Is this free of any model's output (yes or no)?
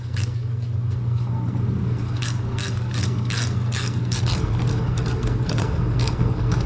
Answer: no